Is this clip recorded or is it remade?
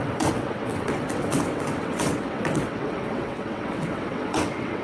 remade